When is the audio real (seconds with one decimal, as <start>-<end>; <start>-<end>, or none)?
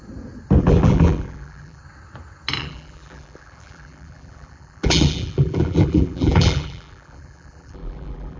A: 0.0-0.6; 1.8-2.6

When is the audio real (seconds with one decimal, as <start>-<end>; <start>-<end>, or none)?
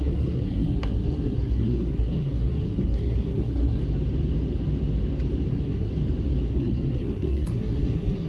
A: 3.8-5.5; 5.9-6.5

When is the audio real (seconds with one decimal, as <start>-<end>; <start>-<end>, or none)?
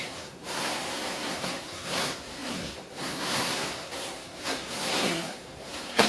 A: none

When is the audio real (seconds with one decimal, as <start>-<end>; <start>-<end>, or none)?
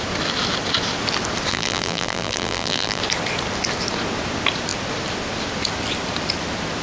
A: 0.0-1.5; 3.0-6.8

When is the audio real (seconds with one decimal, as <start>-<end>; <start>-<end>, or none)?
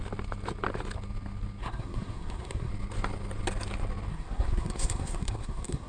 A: 0.0-1.6; 2.7-4.1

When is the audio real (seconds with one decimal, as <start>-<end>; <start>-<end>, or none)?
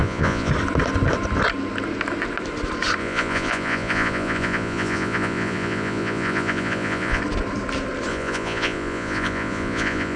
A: 0.5-3.0; 7.2-8.1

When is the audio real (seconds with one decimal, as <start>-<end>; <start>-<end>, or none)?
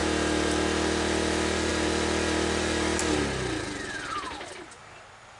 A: 0.0-5.4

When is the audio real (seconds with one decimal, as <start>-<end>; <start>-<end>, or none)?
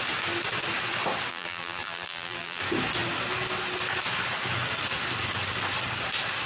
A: 0.0-1.3; 2.6-6.5